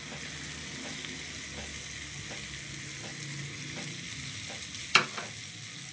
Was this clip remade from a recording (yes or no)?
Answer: no